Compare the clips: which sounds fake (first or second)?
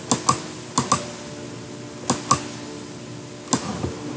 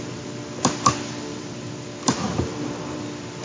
second